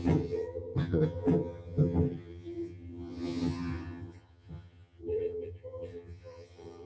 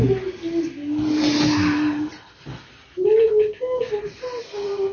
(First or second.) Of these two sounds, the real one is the second